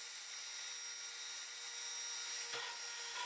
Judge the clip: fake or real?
real